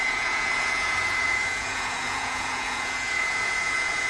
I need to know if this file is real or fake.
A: fake